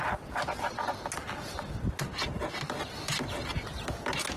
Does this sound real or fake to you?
real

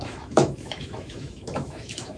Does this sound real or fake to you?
fake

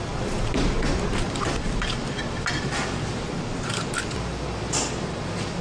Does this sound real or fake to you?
real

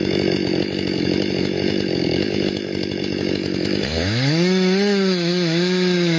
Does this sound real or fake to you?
fake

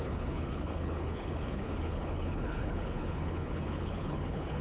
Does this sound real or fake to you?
fake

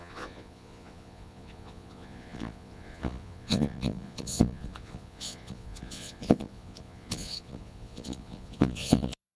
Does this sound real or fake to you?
fake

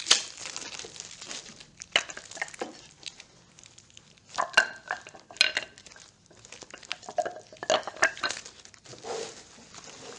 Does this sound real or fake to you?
real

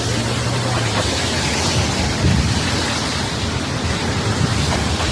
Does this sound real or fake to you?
real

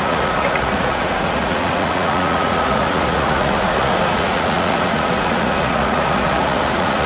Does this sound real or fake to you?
fake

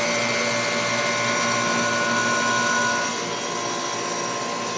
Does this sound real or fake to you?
real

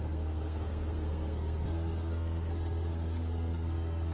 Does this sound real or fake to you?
fake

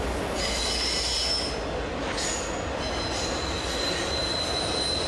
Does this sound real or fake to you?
real